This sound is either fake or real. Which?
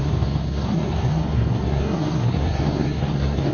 fake